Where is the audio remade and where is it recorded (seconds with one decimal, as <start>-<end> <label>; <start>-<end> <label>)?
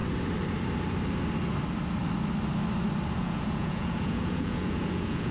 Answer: 0.0-3.2 recorded; 3.2-5.3 remade